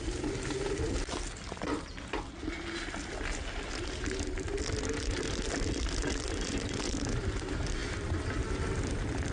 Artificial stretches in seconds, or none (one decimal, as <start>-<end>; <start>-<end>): none